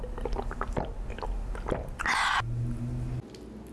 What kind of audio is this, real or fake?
real